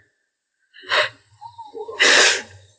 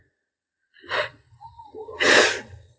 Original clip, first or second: first